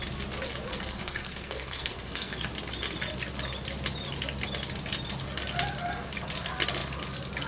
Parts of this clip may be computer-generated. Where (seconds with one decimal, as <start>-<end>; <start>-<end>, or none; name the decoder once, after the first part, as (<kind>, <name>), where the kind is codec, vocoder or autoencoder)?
0.7-2.5 (codec, SNAC)